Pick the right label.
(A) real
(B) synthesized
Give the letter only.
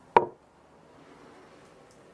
A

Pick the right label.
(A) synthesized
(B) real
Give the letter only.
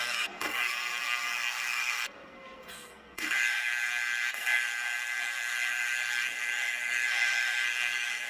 A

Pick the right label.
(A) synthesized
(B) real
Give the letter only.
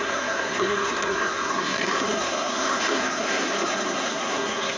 A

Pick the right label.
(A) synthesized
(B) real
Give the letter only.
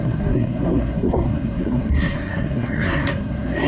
A